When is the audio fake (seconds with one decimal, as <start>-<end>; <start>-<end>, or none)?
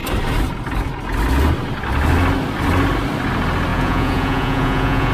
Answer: 3.7-5.1